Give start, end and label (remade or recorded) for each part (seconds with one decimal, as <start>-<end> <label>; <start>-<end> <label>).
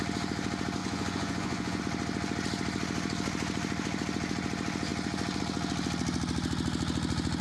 0.0-0.8 recorded; 0.8-1.8 remade; 1.8-7.4 recorded